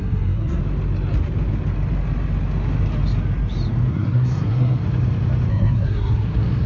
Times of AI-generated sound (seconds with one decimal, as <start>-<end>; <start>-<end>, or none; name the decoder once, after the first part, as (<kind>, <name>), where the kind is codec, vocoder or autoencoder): 0.0-0.6 (codec, SNAC); 3.9-4.8; 5.5-6.7